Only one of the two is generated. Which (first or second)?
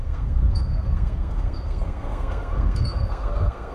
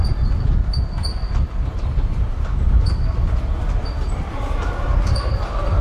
first